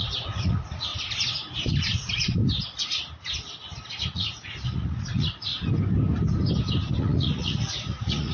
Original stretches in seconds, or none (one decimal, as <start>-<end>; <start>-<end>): 0.9-1.8; 2.4-4.0; 5.5-7.0